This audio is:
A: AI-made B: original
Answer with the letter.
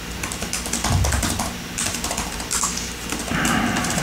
B